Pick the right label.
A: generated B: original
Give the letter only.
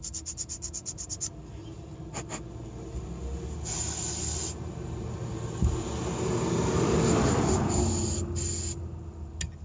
B